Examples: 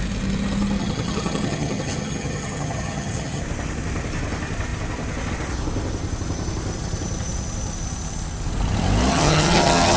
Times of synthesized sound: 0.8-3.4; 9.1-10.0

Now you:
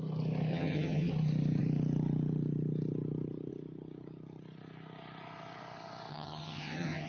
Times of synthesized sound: 0.5-1.1; 6.1-7.1

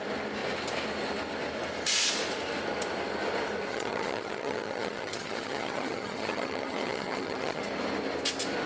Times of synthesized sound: 3.7-7.6

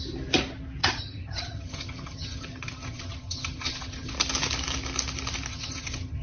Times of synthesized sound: 0.8-4.1; 5.5-6.2

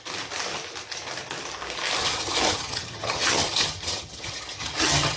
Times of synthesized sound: 2.0-5.2